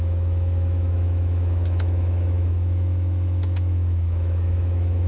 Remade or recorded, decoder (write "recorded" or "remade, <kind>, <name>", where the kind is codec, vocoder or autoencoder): remade, autoencoder, DAC-VAE